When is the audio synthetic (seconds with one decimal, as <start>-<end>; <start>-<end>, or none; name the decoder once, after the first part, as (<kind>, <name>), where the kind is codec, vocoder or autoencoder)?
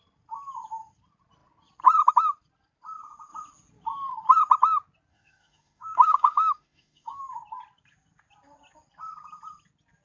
5.1-7.2 (autoencoder, DAC-VAE)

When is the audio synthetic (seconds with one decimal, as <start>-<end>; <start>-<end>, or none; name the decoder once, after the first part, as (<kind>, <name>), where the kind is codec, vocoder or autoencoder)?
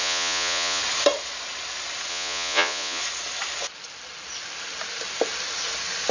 0.0-0.8 (vocoder, Vocos); 2.1-3.0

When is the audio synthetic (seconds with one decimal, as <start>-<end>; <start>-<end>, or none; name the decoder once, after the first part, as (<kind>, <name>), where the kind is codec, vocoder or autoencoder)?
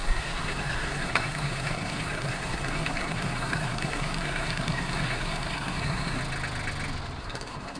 0.0-6.2 (codec, SNAC); 7.2-7.8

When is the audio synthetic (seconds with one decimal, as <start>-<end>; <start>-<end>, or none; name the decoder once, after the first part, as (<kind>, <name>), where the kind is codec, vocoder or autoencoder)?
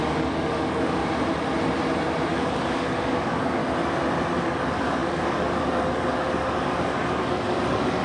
0.0-1.0 (codec, DAC); 2.3-3.6; 4.4-8.0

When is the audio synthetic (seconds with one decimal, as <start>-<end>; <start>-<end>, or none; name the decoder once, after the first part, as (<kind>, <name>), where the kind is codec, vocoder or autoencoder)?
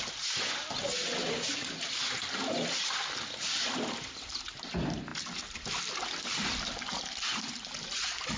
none